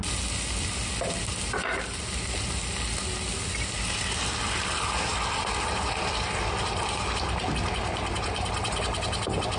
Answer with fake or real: real